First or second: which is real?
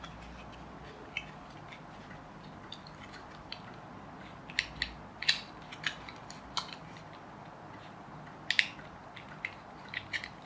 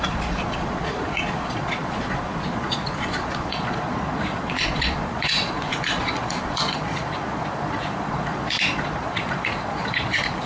first